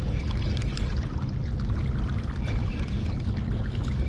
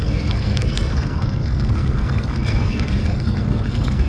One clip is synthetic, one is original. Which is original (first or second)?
first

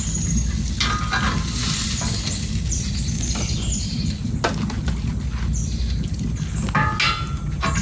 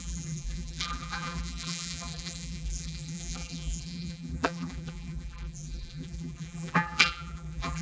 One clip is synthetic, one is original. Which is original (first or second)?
first